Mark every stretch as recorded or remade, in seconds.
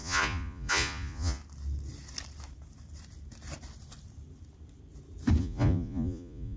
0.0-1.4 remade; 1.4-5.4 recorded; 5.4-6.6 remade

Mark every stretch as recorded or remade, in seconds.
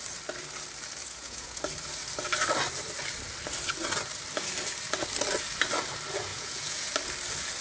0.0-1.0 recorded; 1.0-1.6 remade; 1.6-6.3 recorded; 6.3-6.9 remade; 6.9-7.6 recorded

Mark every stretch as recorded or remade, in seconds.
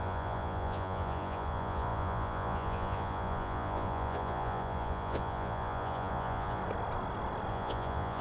0.0-6.6 remade; 6.6-7.5 recorded; 7.5-8.2 remade